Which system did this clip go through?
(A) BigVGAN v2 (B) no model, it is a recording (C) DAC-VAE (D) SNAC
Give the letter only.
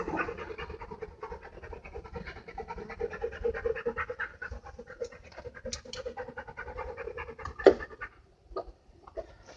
B